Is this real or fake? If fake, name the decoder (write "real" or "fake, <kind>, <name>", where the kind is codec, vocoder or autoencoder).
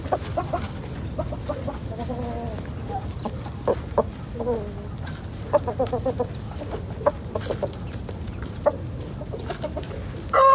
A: real